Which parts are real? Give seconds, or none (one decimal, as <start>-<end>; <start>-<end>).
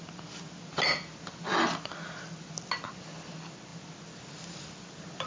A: 0.0-5.3